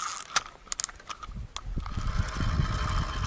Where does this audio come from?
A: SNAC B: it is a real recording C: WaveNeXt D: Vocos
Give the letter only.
B